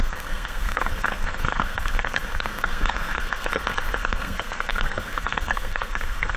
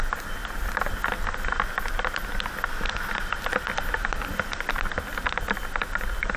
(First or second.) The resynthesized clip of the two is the first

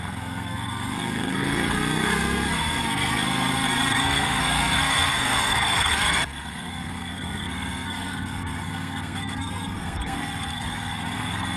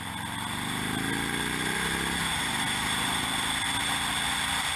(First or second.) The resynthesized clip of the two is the first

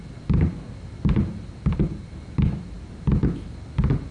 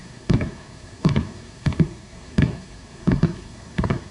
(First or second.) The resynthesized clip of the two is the second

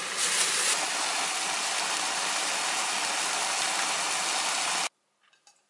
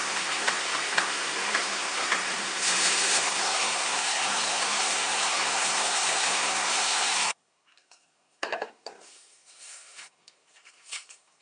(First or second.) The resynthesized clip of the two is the second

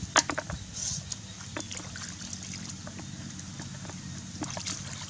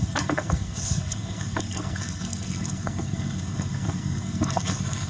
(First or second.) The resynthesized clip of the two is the second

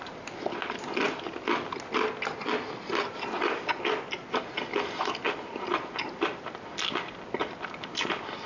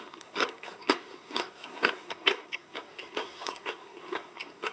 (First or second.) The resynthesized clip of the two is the second